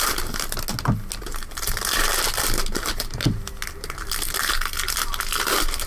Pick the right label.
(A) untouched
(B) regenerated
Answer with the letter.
A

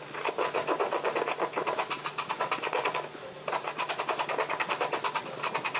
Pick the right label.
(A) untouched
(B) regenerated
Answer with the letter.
A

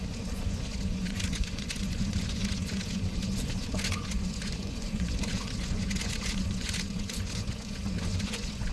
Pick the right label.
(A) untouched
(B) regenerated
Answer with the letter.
B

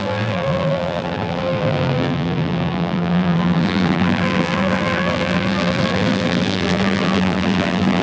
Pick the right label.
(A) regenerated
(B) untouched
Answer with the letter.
A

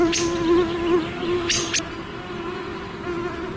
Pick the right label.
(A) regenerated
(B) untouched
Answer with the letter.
B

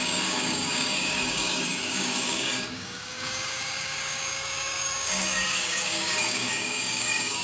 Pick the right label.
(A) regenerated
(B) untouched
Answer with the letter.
A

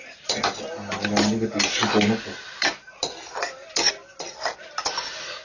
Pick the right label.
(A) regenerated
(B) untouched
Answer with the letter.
B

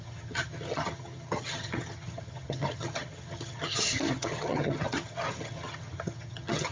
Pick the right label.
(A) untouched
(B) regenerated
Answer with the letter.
B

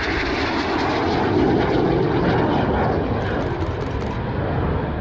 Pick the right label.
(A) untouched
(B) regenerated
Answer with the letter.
A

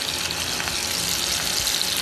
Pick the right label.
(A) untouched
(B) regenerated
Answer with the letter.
A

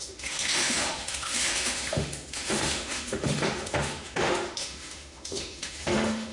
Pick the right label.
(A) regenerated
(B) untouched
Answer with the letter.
A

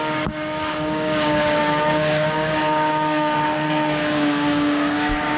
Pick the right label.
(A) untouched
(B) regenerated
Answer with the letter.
B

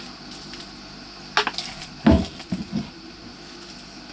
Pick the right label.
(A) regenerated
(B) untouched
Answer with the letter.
B